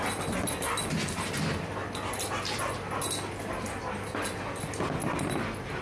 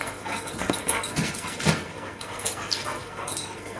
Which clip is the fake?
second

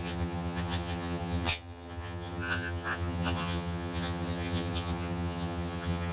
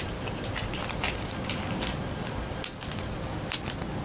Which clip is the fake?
first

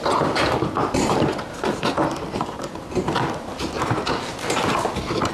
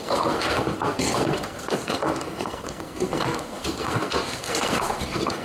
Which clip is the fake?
second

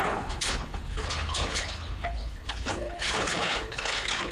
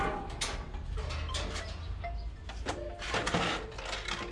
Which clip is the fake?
first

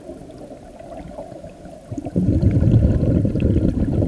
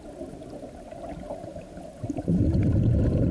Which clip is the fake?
first